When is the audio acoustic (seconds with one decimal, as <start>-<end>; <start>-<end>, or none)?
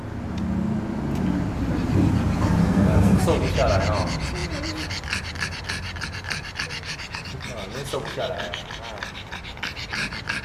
0.0-2.6; 3.2-10.4